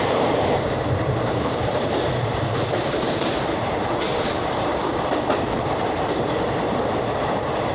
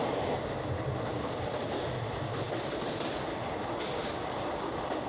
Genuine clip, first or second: second